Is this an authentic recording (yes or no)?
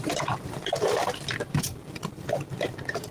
no